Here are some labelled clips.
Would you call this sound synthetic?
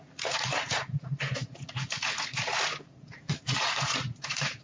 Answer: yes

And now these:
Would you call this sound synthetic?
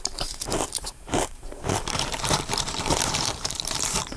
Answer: yes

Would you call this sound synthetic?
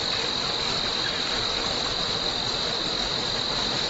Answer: no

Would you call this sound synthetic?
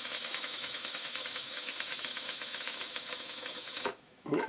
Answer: yes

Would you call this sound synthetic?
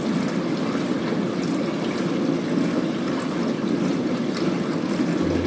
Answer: no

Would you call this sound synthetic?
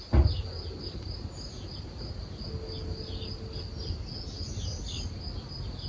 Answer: no